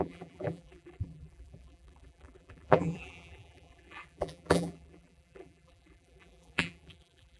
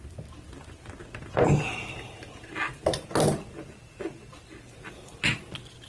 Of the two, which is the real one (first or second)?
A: second